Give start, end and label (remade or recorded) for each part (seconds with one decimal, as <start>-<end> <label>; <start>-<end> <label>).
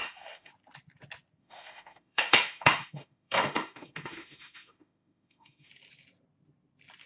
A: 0.0-0.5 remade; 0.5-1.4 recorded; 1.4-5.7 remade; 5.7-7.1 recorded